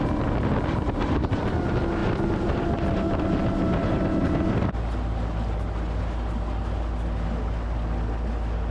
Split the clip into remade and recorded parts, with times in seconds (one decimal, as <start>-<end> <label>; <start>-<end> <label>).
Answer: 0.0-2.0 recorded; 2.0-4.5 remade; 4.5-8.7 recorded